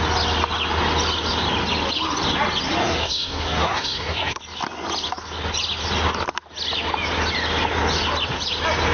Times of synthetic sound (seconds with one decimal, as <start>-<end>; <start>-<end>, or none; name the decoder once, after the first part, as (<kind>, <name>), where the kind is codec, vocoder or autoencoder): 2.8-4.4 (codec, SNAC)